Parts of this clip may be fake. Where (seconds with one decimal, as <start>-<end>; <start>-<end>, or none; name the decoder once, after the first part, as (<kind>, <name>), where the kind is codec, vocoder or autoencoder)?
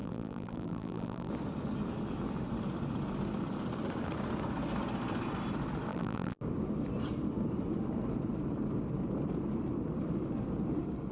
0.0-1.3 (vocoder, BigVGAN v2); 5.9-6.4